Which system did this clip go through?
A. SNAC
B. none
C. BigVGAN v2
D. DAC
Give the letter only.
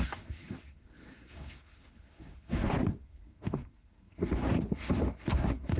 A